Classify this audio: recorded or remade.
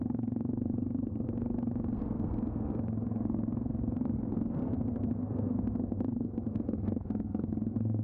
remade